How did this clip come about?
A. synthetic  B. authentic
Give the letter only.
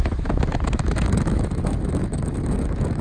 A